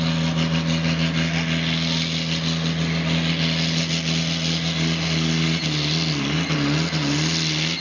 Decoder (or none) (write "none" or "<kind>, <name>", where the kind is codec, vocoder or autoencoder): none